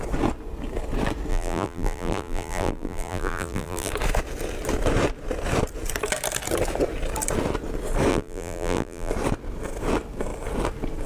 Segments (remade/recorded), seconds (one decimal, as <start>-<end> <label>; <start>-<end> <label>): 0.0-1.3 recorded; 1.3-3.9 remade; 3.9-8.1 recorded; 8.1-9.1 remade; 9.1-11.1 recorded